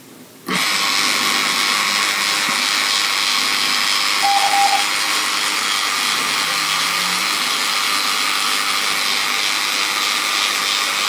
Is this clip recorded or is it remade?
recorded